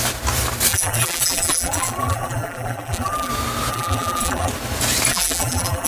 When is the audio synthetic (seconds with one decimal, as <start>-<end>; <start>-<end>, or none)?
0.7-3.3; 3.7-4.5; 5.1-5.9